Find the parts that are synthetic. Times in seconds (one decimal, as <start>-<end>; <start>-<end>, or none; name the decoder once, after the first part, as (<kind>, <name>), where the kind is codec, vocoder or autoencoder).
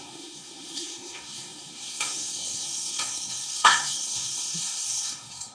0.0-5.5 (codec, SNAC)